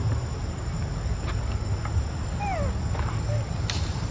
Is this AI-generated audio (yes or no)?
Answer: no